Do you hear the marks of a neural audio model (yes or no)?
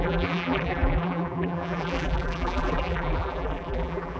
yes